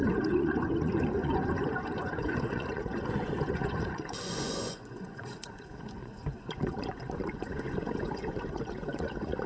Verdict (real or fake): fake